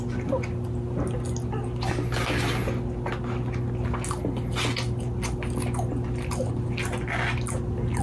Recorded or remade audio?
recorded